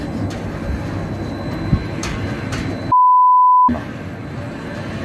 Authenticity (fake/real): real